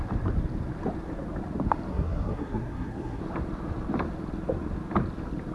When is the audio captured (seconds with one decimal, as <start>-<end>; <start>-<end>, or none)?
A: 0.0-1.9; 3.2-5.5